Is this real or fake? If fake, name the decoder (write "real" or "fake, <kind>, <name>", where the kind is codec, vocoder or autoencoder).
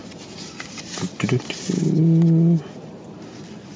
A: real